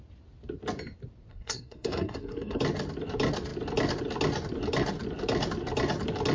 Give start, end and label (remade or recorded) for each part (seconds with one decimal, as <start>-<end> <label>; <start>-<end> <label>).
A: 0.0-1.3 recorded; 1.3-2.6 remade; 2.6-6.3 recorded